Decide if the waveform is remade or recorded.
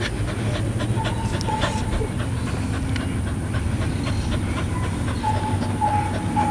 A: recorded